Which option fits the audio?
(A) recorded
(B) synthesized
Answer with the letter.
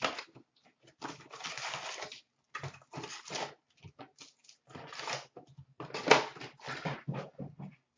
A